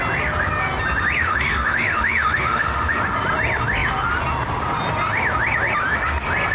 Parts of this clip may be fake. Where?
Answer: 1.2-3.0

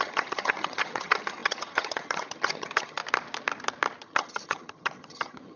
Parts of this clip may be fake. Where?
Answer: 0.0-3.0; 4.0-5.6